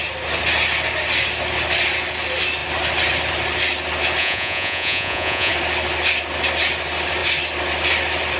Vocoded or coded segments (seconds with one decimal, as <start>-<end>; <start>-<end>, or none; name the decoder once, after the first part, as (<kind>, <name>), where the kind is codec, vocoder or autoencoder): 4.2-5.5 (vocoder, Vocos)